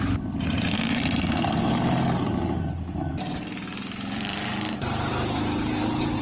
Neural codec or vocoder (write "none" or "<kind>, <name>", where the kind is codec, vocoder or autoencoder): vocoder, BigVGAN v2